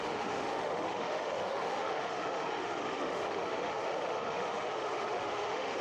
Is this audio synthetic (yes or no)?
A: yes